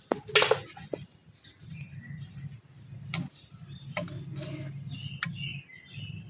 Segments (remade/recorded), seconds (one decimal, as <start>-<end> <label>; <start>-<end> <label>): 0.0-6.3 recorded